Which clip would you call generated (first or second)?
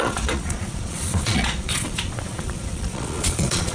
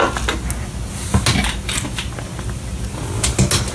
first